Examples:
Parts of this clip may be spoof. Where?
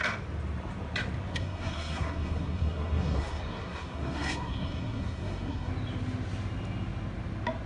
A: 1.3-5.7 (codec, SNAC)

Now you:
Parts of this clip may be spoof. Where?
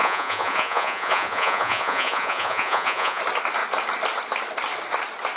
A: 0.0-3.2 (vocoder, Vocos)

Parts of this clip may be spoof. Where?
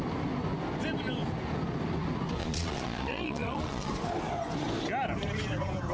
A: 2.4-3.9 (vocoder, Vocos)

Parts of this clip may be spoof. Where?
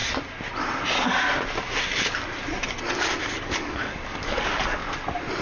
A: 3.2-4.8 (codec, DAC)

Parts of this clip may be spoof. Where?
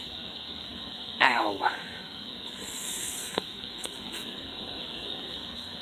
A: 0.0-5.8 (codec, SNAC)